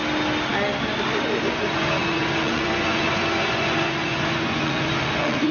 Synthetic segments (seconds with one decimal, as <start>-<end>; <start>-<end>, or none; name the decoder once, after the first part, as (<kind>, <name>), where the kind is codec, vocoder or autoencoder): 1.4-5.5 (vocoder, Vocos)